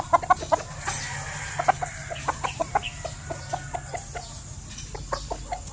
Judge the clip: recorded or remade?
recorded